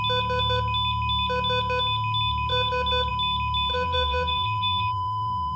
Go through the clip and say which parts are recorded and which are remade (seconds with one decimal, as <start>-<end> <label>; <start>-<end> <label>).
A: 0.0-3.7 recorded; 3.7-5.6 remade